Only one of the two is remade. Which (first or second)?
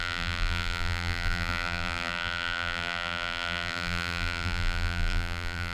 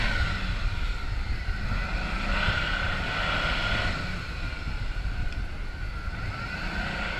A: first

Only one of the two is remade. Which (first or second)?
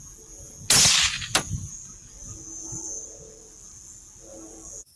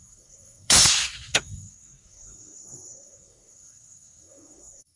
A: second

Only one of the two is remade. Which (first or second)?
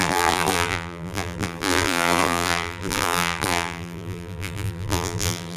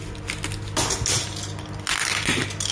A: first